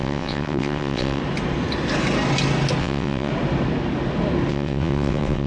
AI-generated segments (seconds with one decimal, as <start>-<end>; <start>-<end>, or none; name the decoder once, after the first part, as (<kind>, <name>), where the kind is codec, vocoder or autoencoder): 0.0-1.2 (vocoder, WaveNeXt); 2.8-3.3; 4.5-5.5